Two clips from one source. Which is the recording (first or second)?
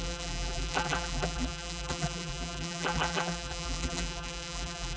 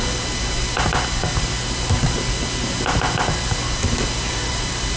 second